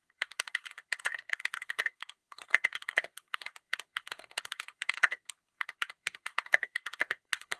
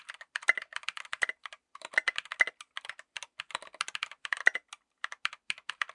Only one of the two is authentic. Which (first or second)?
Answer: second